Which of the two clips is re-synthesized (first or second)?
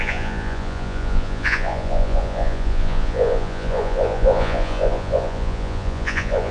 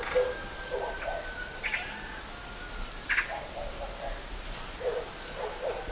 first